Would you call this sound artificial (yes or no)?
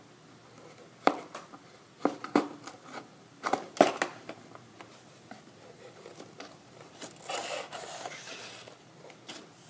no